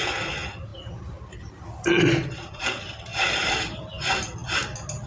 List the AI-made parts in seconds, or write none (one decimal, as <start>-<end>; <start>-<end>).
none